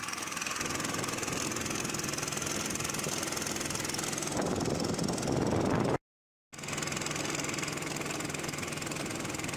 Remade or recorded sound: recorded